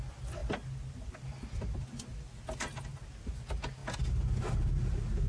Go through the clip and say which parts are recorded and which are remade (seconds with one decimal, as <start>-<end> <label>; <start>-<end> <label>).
0.0-5.3 recorded